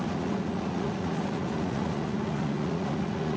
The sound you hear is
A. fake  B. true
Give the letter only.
A